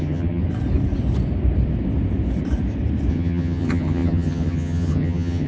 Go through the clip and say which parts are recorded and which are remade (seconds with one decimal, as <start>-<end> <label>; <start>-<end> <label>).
0.0-0.4 remade; 0.4-3.1 recorded; 3.1-5.5 remade